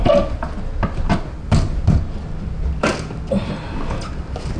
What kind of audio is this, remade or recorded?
recorded